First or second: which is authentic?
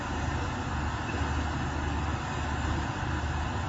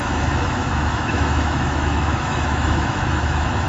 first